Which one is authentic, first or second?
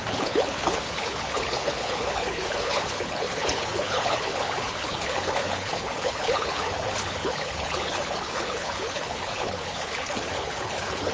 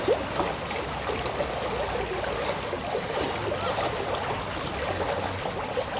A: second